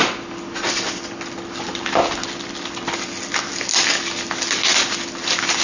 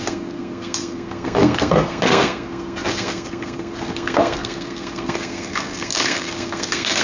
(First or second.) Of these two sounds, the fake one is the second